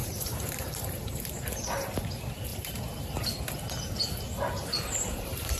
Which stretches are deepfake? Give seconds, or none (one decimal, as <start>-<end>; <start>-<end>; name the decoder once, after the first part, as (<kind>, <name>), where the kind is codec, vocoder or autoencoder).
0.0-1.3 (vocoder, BigVGAN v2); 2.5-3.4; 4.6-5.6